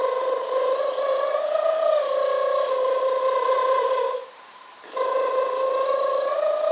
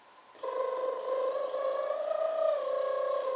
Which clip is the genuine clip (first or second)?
second